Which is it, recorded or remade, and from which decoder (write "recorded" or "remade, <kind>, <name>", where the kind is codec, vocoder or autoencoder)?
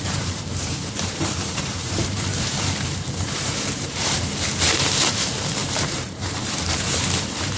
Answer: remade, vocoder, BigVGAN v2